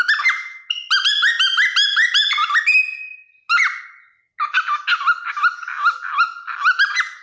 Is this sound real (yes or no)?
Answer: yes